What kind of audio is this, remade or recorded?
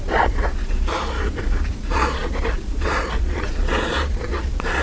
remade